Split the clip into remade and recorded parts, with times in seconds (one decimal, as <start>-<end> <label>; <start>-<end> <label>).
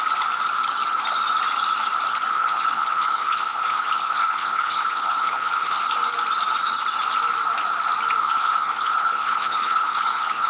0.0-2.3 recorded; 2.3-5.8 remade; 5.8-8.2 recorded; 8.2-10.5 remade